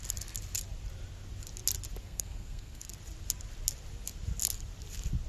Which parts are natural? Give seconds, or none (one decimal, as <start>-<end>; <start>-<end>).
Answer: 0.0-2.0; 2.9-5.3